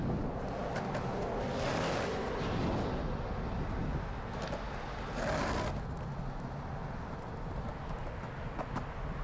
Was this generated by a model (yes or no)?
no